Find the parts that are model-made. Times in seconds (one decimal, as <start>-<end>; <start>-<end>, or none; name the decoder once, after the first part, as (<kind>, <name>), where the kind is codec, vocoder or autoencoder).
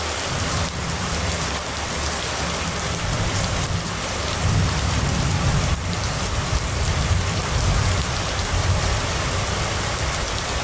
none